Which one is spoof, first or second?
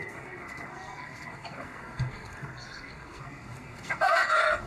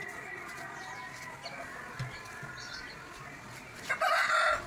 first